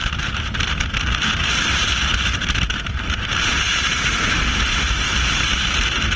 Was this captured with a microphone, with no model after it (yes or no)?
no